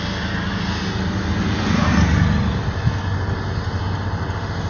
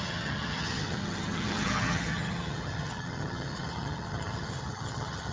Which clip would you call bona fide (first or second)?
first